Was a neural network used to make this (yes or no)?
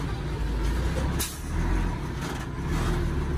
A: no